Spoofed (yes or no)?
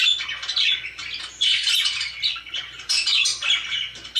no